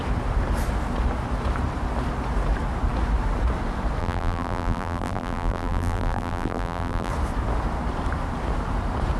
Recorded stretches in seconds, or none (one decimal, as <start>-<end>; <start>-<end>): 0.0-4.0; 7.1-9.2

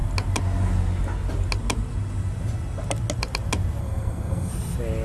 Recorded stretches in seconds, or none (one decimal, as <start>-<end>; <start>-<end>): 0.0-3.8; 4.5-5.0